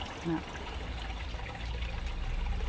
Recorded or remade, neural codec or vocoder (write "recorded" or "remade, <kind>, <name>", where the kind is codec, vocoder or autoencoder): recorded